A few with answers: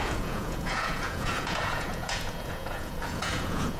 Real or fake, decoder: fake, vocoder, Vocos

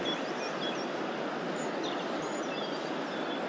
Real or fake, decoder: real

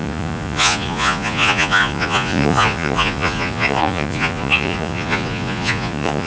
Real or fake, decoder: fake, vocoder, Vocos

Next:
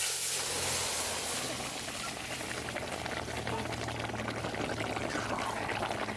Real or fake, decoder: real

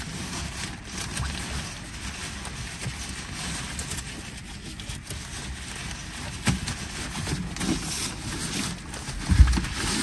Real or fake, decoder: real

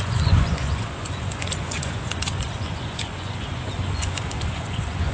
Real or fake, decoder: fake, vocoder, Vocos